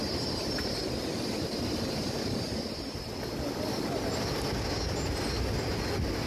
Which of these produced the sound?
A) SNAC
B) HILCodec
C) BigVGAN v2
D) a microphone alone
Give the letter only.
D